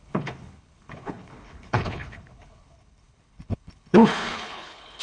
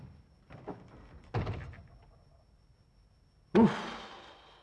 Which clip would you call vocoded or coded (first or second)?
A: first